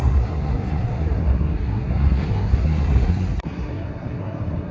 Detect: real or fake fake